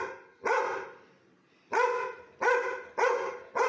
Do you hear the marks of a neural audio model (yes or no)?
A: no